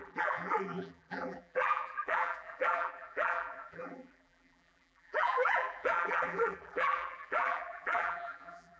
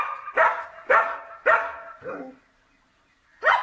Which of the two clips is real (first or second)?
second